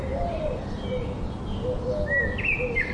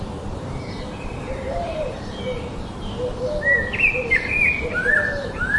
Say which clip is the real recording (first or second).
first